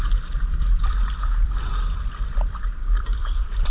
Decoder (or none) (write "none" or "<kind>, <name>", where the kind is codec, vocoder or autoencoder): vocoder, BigVGAN v2